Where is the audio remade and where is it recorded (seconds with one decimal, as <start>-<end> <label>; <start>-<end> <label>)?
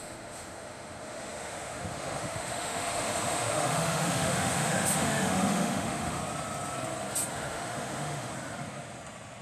0.0-6.2 remade; 6.2-7.3 recorded; 7.3-8.3 remade; 8.3-9.4 recorded